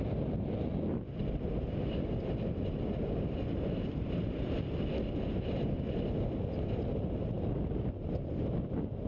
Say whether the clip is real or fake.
real